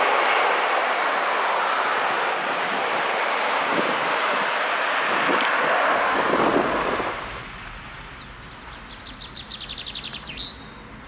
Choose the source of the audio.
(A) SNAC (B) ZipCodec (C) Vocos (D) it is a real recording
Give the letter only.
D